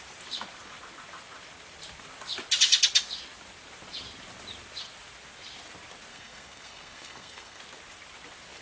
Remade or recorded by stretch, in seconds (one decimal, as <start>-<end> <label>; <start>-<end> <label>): 0.0-6.1 recorded; 6.1-7.6 remade; 7.6-8.6 recorded